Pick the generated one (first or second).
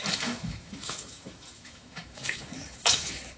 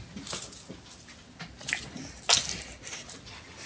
first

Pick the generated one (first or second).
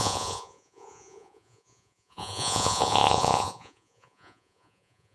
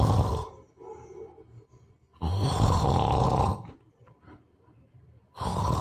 first